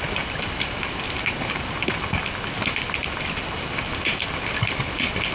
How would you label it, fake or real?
real